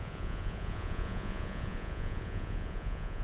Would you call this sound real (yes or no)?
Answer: no